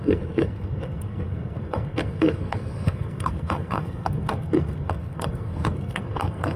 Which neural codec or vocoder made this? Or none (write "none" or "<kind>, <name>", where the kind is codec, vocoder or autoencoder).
codec, SNAC